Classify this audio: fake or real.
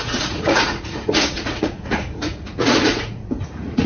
fake